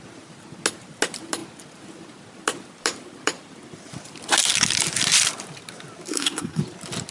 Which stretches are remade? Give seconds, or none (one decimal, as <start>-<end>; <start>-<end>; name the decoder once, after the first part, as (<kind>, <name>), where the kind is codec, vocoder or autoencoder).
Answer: 6.1-6.6 (codec, SNAC)